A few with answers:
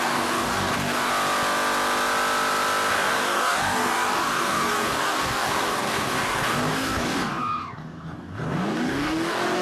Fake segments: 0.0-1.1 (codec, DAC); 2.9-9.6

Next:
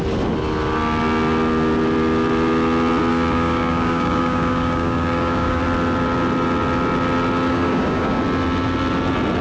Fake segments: 3.1-5.6 (codec, DAC); 7.5-8.2

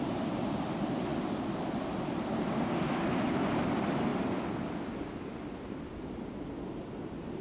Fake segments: none

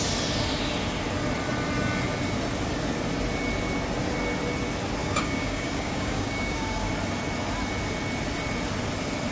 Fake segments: 5.0-6.9 (codec, DAC)

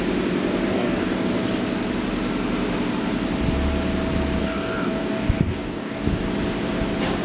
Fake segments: 0.7-1.3 (codec, DAC); 4.4-6.2